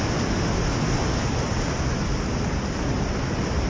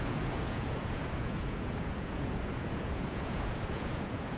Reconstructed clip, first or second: second